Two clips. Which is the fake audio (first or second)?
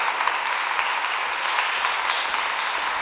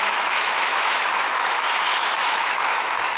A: second